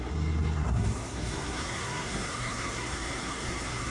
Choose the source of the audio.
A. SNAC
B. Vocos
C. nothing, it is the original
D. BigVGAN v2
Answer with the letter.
A